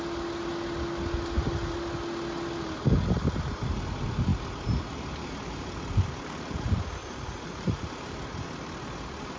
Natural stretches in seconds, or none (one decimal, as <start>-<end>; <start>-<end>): 0.0-7.0; 7.9-9.4